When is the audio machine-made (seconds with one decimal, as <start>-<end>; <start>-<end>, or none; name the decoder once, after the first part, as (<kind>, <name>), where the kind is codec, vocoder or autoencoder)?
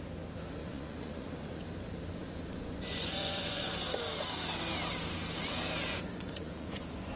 0.6-1.6 (vocoder, Vocos); 2.2-3.7; 5.9-7.2